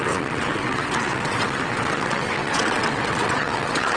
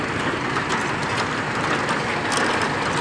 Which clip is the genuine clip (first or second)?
second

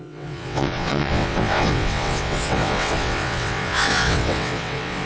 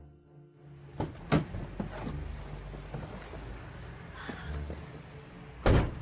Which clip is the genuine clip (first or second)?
second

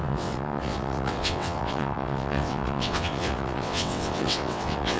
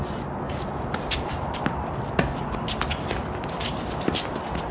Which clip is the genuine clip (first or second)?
second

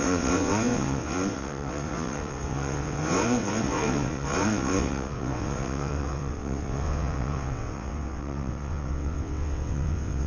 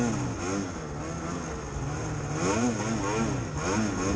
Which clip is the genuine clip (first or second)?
second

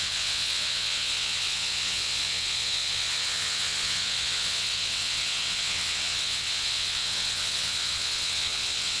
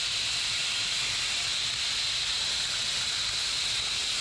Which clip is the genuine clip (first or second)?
second